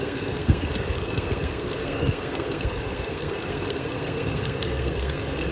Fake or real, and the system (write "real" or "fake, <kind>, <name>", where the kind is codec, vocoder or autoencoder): fake, codec, SNAC